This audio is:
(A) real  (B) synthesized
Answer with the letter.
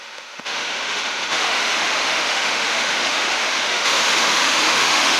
B